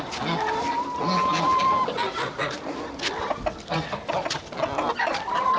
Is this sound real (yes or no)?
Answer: yes